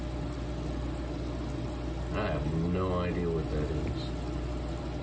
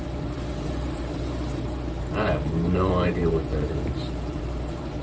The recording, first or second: first